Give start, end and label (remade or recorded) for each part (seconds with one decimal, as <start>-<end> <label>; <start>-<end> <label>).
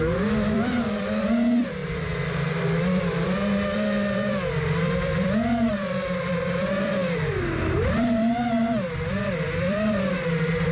0.0-7.0 remade; 7.0-9.6 recorded; 9.6-10.7 remade